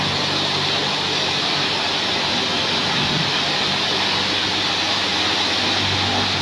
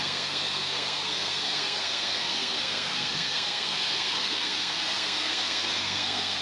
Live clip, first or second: first